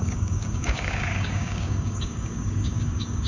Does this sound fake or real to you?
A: fake